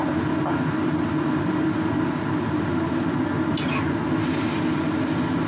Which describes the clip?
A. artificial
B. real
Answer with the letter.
B